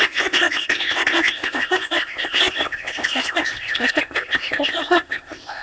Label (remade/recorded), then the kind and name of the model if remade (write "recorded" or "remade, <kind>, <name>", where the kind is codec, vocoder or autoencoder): remade, codec, ZipCodec